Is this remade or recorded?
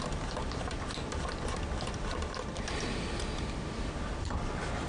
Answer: recorded